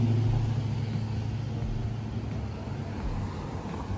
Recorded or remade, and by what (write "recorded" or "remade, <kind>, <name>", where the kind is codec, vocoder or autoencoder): recorded